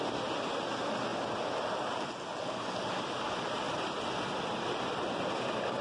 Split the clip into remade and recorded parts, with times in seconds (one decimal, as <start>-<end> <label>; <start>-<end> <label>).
0.0-1.1 recorded; 1.1-1.8 remade; 1.8-5.8 recorded